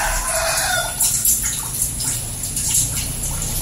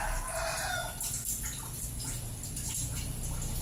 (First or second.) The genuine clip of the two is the second